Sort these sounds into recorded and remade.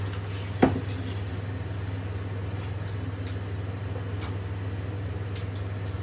recorded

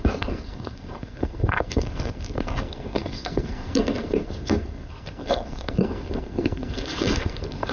remade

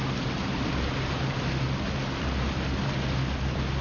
recorded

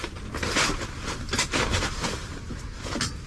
recorded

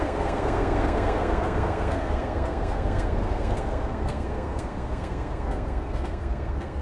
remade